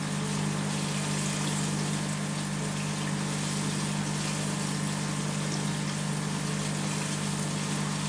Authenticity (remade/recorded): recorded